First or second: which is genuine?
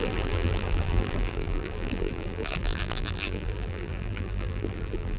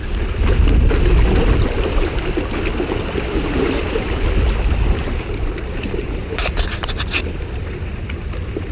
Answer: second